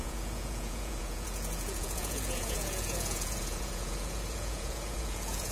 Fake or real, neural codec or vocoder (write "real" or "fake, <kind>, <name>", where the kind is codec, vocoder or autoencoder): fake, vocoder, Vocos